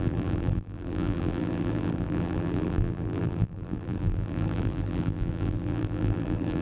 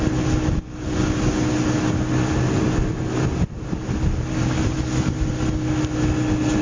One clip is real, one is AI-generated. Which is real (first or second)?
second